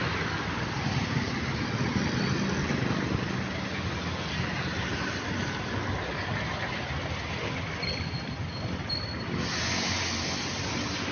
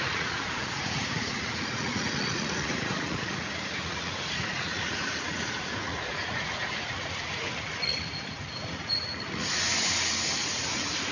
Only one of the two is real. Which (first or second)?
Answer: first